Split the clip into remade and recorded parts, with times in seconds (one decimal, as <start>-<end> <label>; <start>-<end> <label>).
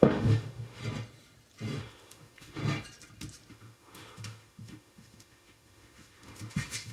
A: 0.0-0.8 remade; 0.8-1.8 recorded; 1.8-2.6 remade; 2.6-3.5 recorded; 3.5-6.9 remade